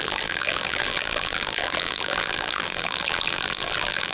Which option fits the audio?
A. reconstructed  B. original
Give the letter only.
A